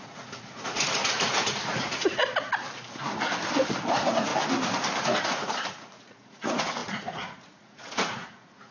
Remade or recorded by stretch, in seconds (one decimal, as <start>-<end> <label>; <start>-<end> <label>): 0.0-2.2 remade; 2.2-3.9 recorded; 3.9-4.3 remade; 4.3-5.2 recorded; 5.2-8.7 remade